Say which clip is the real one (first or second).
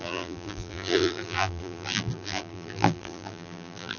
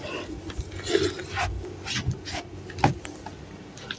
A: second